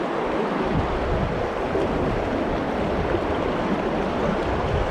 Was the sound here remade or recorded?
recorded